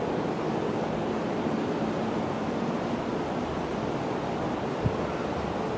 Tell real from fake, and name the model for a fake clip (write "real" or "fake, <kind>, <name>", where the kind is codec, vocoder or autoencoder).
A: real